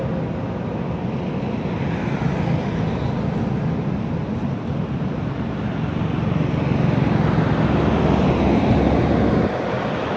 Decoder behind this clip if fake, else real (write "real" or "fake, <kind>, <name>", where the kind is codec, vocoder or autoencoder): real